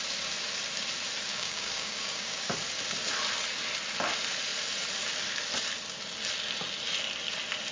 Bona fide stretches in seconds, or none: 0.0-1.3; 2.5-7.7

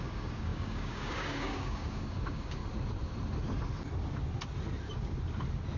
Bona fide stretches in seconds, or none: 2.6-5.8

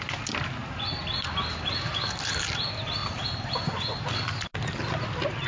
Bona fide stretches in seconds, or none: 0.0-5.5

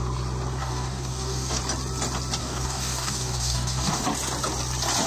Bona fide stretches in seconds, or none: 0.0-0.6; 1.6-2.4; 4.0-5.1

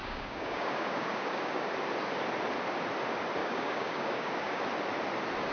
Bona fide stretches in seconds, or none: 1.7-3.4; 4.6-5.5

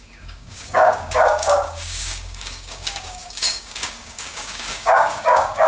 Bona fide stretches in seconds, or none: none